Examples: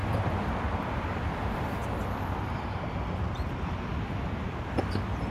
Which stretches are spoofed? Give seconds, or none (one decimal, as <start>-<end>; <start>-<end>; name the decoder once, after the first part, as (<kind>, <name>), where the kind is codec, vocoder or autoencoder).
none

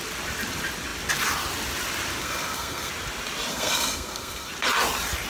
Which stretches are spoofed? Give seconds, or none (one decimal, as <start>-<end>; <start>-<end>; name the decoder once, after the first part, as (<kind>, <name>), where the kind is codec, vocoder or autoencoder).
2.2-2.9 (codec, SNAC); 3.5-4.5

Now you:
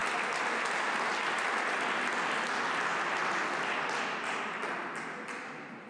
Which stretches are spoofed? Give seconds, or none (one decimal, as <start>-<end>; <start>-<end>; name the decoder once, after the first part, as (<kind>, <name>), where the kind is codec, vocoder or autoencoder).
none

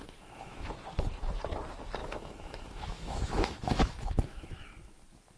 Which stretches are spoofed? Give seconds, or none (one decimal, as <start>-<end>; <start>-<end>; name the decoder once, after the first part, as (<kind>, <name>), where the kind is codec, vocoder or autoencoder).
0.0-0.7 (autoencoder, DAC-VAE); 2.0-4.5